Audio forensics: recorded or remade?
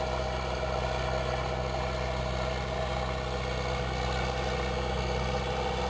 recorded